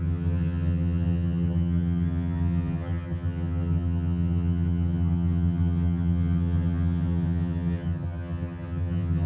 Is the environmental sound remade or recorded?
remade